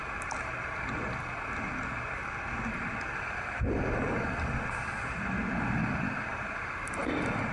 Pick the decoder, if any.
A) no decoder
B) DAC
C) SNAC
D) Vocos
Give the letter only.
A